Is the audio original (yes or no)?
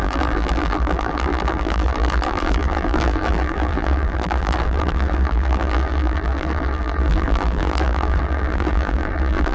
no